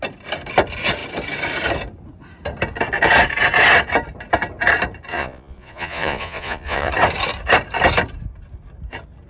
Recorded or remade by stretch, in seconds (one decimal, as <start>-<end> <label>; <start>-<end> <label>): 0.0-5.1 recorded; 5.1-6.9 remade; 6.9-9.3 recorded